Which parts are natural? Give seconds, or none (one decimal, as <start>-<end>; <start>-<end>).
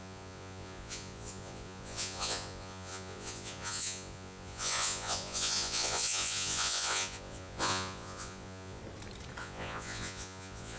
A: 8.8-9.4